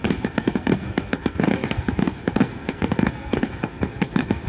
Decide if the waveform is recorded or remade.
remade